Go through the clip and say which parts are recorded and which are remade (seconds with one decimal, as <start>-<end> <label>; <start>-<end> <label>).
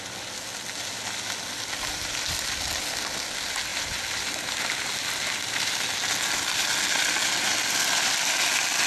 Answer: 0.0-8.9 recorded